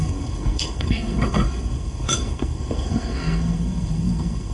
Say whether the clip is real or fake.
fake